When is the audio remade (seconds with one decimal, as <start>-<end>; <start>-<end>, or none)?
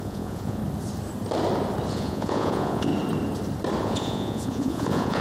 0.0-0.6; 1.9-2.9; 3.8-5.2